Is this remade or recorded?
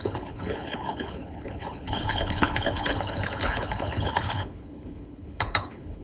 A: remade